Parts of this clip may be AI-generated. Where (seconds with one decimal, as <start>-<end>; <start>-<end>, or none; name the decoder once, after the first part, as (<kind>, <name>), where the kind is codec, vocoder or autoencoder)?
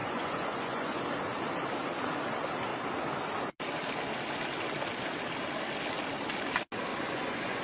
0.0-1.0 (vocoder, Vocos); 6.9-7.6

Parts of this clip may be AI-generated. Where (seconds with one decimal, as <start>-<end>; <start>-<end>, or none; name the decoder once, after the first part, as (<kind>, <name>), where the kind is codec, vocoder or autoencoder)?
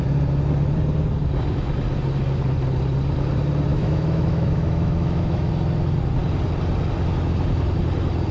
3.7-5.5 (autoencoder, DAC-VAE)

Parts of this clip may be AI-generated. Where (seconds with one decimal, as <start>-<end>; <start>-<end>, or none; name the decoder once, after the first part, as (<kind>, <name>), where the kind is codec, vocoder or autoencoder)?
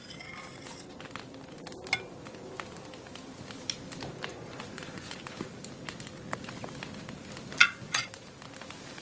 4.3-5.2 (vocoder, Vocos); 7.6-8.1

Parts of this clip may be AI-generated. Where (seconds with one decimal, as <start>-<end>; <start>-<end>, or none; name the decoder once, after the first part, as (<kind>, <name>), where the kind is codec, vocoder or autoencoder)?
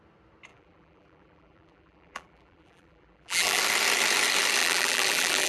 0.5-3.6 (vocoder, BigVGAN v2); 4.6-5.5